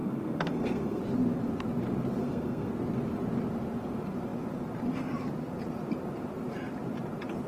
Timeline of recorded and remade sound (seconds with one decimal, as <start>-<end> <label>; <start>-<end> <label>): 0.0-1.0 remade; 1.0-2.2 recorded; 2.2-2.7 remade; 2.7-7.5 recorded